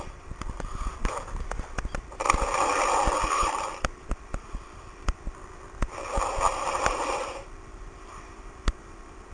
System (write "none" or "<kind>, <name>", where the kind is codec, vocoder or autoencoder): vocoder, BigVGAN v2